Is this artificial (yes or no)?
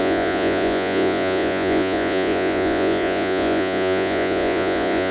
yes